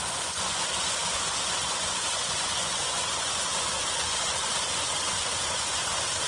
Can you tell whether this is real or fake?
fake